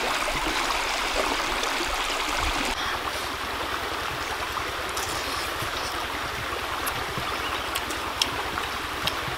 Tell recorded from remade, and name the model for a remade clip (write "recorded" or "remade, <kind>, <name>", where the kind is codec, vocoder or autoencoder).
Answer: recorded